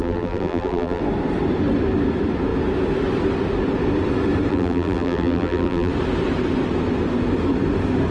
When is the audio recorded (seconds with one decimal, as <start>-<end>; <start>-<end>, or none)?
1.0-4.5; 5.9-8.1